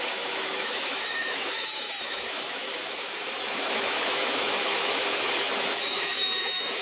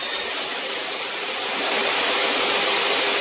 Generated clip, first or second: first